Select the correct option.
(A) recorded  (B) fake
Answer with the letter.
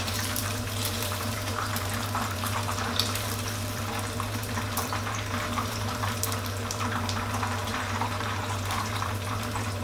B